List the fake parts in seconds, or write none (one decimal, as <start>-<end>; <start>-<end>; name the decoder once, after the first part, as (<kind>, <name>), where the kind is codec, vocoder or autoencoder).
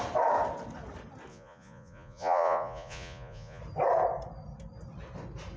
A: 1.3-3.6 (vocoder, Vocos)